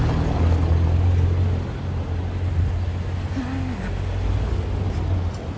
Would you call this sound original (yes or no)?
yes